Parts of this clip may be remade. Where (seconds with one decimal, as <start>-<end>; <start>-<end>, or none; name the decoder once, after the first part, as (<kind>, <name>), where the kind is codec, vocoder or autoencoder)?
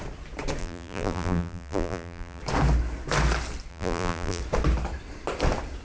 0.6-2.4 (vocoder, BigVGAN v2); 3.7-4.4